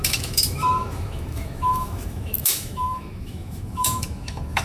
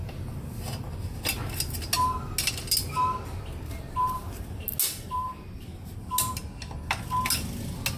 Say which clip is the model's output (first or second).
first